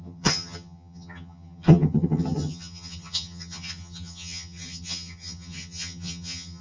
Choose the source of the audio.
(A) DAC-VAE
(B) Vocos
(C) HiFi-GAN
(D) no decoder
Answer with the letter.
C